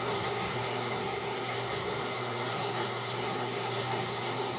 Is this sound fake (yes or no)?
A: yes